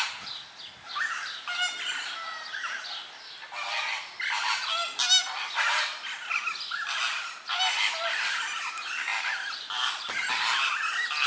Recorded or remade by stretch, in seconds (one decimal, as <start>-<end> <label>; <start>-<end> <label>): 0.0-5.2 recorded; 5.2-8.7 remade; 8.7-9.1 recorded; 9.1-10.7 remade; 10.7-11.3 recorded